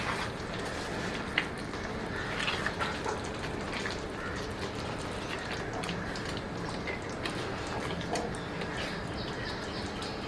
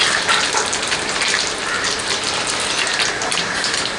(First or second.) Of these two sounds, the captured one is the first